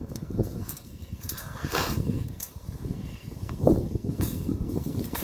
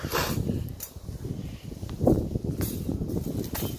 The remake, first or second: first